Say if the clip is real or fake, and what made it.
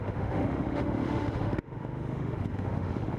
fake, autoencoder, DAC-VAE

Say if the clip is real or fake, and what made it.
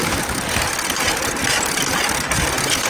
real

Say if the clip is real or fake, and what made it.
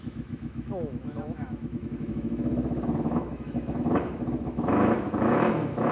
fake, autoencoder, DAC-VAE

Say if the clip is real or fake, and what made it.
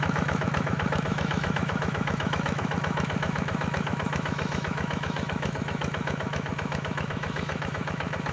fake, autoencoder, DAC-VAE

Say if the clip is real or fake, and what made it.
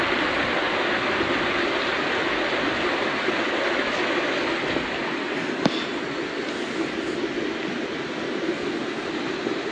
real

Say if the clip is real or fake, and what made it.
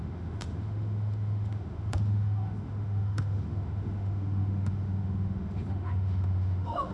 fake, autoencoder, DAC-VAE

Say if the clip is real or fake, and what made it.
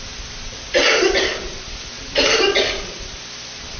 real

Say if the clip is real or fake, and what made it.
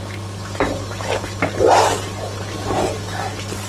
real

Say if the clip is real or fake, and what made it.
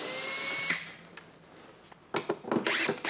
real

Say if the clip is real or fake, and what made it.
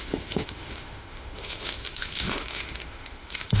fake, autoencoder, DAC-VAE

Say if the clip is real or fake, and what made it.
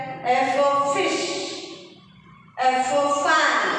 real